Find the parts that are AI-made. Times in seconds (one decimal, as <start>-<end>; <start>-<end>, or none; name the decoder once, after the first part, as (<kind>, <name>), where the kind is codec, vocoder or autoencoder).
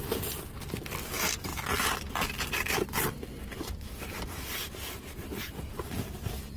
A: 1.5-5.5 (vocoder, BigVGAN v2)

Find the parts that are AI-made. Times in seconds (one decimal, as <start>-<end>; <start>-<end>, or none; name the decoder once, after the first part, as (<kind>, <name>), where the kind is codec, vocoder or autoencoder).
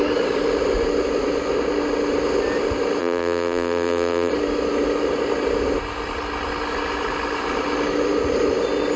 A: 3.0-4.3 (vocoder, BigVGAN v2)